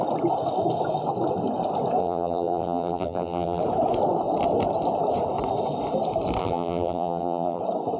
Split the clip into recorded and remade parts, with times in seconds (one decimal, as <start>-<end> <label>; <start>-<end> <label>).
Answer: 0.0-2.0 recorded; 2.0-3.6 remade; 3.6-6.4 recorded; 6.4-7.6 remade; 7.6-8.0 recorded